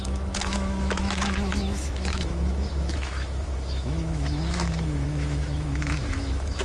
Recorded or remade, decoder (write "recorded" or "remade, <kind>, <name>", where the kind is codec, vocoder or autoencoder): remade, autoencoder, DAC-VAE